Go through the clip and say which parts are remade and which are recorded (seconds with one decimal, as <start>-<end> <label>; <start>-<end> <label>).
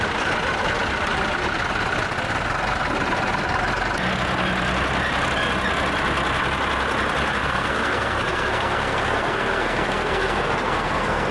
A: 0.0-7.4 recorded; 7.4-11.3 remade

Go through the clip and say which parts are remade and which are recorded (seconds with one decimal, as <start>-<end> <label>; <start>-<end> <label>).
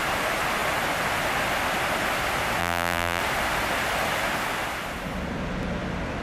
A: 0.0-2.6 recorded; 2.6-3.2 remade; 3.2-6.2 recorded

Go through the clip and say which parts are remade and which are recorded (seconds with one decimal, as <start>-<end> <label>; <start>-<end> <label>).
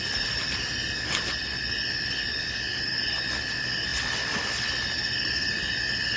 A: 0.0-6.2 recorded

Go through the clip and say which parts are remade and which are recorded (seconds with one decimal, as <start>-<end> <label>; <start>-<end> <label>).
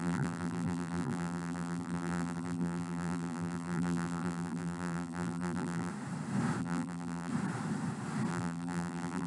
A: 0.0-5.9 remade; 5.9-6.6 recorded; 6.6-7.3 remade; 7.3-8.3 recorded; 8.3-9.3 remade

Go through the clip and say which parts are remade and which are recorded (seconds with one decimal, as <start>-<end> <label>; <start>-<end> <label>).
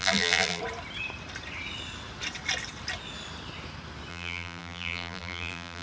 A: 0.0-0.6 remade; 0.6-4.1 recorded; 4.1-5.8 remade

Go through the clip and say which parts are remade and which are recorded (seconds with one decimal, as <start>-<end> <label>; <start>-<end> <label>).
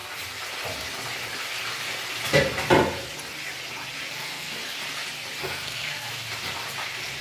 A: 0.0-4.1 recorded; 4.1-4.6 remade; 4.6-5.4 recorded; 5.4-6.1 remade; 6.1-7.2 recorded